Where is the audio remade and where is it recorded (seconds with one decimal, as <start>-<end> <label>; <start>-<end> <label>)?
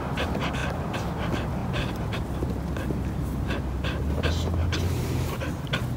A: 0.0-1.6 recorded; 1.6-2.2 remade; 2.2-4.6 recorded; 4.6-5.3 remade; 5.3-6.0 recorded